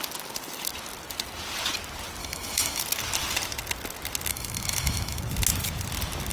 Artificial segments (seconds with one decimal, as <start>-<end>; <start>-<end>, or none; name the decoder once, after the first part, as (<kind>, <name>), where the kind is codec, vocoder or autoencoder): 2.2-2.8 (autoencoder, DAC-VAE); 4.3-5.2